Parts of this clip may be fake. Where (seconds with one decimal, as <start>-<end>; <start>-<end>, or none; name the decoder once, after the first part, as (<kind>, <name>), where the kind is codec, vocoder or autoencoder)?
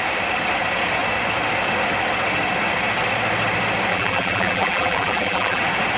3.9-5.6 (vocoder, BigVGAN v2)